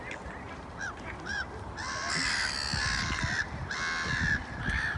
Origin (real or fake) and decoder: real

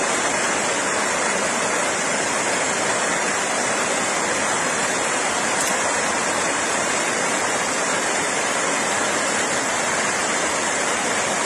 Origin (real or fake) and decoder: real